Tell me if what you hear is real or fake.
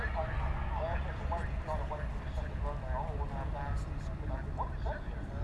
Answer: real